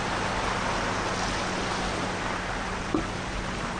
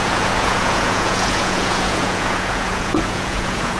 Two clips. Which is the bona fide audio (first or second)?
first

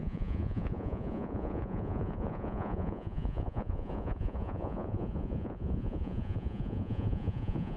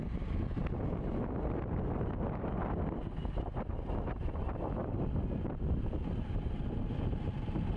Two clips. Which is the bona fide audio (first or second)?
second